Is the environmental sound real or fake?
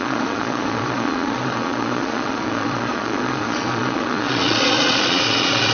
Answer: fake